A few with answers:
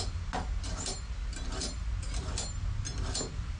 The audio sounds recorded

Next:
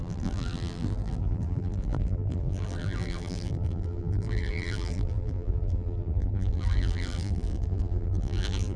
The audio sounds remade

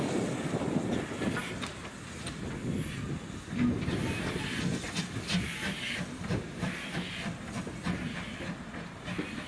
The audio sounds recorded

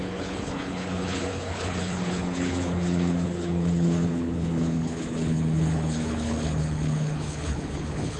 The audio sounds remade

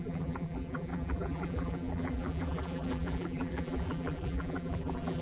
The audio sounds remade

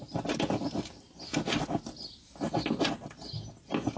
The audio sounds recorded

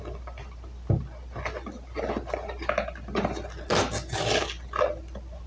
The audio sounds recorded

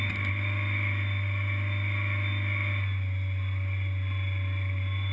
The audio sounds recorded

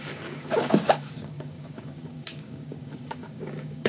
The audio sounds remade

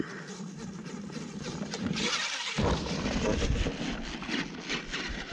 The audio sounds remade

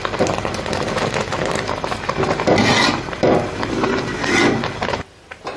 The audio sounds recorded